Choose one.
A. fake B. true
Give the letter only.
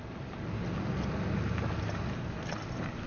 B